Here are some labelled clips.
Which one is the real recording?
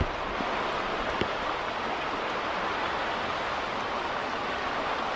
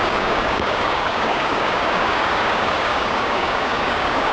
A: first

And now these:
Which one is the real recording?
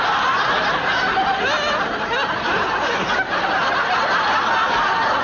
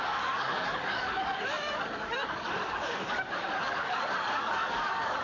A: first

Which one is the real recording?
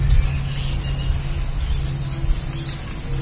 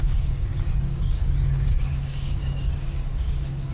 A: first